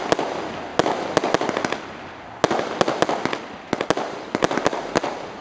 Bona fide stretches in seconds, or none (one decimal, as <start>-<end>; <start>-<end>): 0.0-5.4